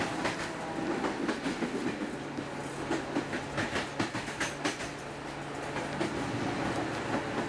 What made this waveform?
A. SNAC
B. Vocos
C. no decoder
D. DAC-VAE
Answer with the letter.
C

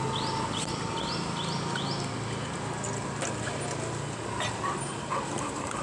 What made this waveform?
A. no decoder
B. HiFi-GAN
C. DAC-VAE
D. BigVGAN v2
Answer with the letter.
A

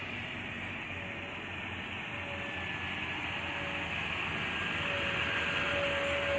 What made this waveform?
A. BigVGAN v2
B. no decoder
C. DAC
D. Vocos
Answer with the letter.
B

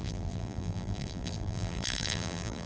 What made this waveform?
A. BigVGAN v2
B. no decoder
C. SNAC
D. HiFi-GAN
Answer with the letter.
A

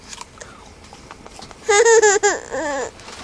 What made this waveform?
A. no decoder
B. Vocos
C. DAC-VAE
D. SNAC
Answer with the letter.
A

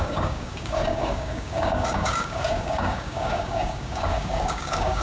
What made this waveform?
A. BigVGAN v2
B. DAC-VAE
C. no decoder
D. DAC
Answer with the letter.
D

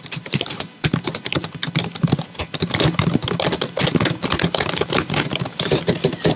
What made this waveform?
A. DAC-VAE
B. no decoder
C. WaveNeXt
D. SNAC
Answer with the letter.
B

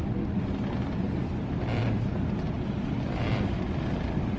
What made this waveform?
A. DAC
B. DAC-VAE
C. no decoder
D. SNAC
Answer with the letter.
C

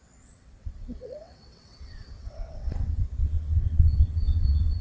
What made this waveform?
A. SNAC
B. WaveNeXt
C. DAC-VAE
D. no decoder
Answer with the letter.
B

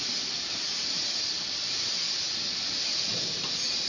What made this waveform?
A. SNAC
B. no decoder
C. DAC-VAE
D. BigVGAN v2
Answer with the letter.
B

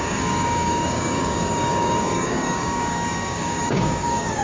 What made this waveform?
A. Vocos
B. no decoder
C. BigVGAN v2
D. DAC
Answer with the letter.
D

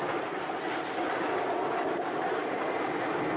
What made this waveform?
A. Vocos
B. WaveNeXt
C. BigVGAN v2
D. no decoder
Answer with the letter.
D